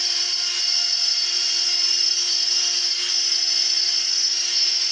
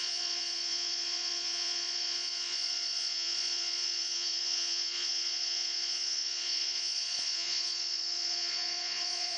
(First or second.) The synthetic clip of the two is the second